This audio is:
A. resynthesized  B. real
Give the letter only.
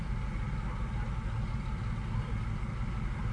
B